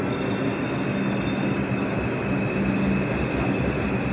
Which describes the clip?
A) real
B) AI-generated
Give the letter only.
A